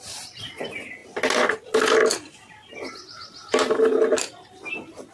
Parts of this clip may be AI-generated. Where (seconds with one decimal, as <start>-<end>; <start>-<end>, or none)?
none